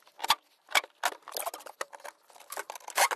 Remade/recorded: recorded